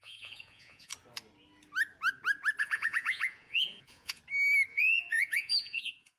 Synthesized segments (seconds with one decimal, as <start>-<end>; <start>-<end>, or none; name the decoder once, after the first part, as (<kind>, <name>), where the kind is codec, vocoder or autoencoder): 0.0-0.9 (vocoder, Vocos); 2.6-4.2; 4.7-6.2